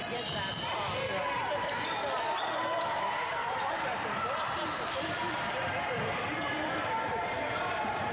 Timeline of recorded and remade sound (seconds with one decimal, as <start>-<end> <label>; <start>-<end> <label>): 0.0-3.4 recorded; 3.4-7.6 remade; 7.6-8.1 recorded

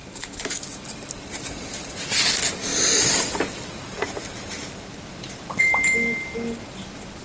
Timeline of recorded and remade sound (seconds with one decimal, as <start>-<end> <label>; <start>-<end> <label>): 0.0-7.2 recorded

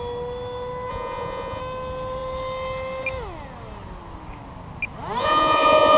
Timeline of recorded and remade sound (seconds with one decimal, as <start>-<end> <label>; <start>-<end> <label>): 0.0-0.9 recorded; 0.9-1.6 remade; 1.6-5.2 recorded; 5.2-6.0 remade

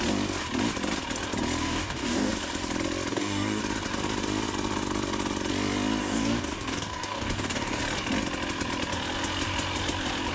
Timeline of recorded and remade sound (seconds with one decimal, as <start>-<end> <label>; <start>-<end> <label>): 0.0-1.6 recorded; 1.6-2.3 remade; 2.3-3.1 recorded; 3.1-3.6 remade; 3.6-6.0 recorded; 6.0-7.8 remade; 7.8-10.3 recorded

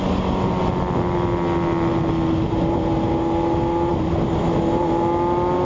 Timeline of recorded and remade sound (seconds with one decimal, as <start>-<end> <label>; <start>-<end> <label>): 0.0-5.6 recorded